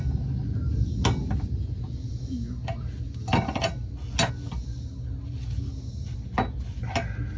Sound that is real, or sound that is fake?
real